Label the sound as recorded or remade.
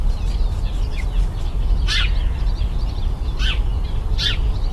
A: recorded